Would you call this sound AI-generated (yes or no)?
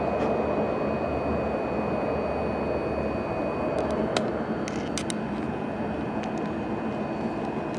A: no